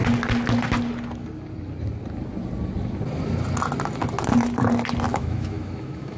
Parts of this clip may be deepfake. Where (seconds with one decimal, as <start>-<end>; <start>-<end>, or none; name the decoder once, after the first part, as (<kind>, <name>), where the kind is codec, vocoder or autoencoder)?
5.1-6.2 (autoencoder, DAC-VAE)